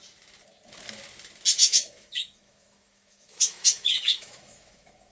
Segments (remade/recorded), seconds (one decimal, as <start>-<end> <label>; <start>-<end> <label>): 0.0-1.6 recorded; 1.6-5.1 remade